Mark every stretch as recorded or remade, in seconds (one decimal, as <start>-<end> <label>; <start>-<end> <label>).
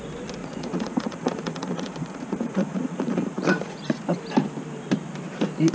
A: 0.0-0.4 recorded; 0.4-3.8 remade; 3.8-5.7 recorded